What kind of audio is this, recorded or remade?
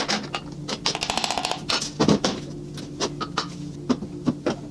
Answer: recorded